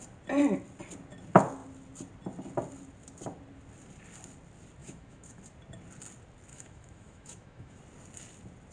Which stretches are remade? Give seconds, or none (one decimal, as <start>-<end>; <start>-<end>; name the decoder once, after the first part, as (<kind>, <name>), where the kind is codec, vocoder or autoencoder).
4.8-5.4 (autoencoder, DAC-VAE); 6.5-7.8